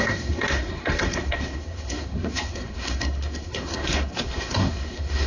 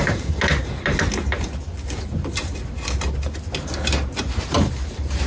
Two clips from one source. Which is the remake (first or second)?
first